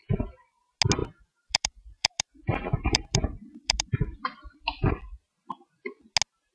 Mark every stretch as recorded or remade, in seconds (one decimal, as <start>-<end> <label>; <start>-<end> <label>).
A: 0.0-1.0 recorded; 1.0-4.9 remade; 4.9-6.5 recorded